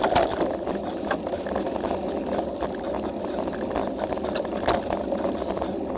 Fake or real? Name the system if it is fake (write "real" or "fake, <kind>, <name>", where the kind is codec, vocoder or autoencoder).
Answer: real